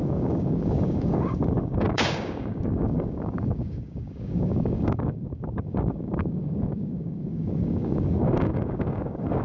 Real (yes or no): no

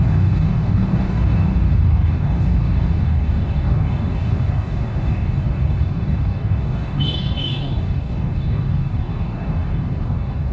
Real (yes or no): no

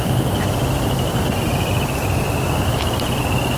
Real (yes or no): yes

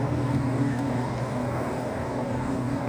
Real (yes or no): no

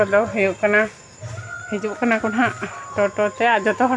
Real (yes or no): yes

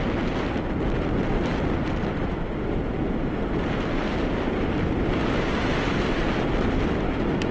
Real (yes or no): yes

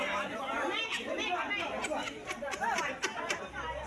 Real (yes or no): yes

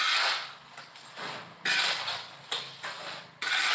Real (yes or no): yes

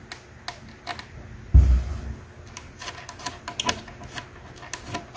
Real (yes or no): yes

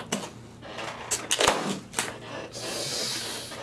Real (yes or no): yes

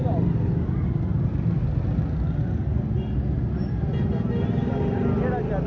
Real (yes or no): yes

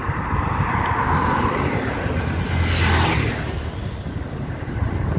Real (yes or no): yes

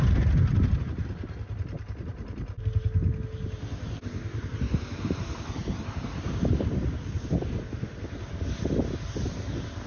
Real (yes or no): yes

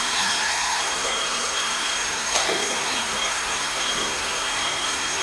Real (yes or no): no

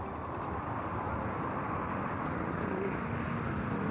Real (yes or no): yes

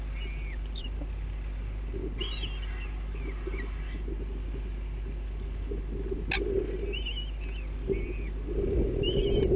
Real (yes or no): yes